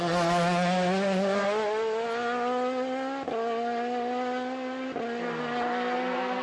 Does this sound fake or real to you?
real